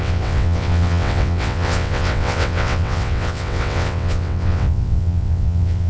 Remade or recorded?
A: remade